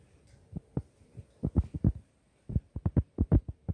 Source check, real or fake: real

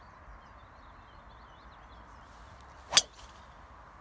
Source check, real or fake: real